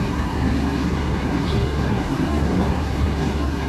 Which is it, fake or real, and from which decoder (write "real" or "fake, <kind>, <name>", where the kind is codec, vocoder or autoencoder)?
fake, codec, SNAC